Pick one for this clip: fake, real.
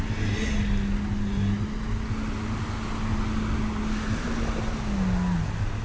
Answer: real